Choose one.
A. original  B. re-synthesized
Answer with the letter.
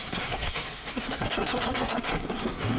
B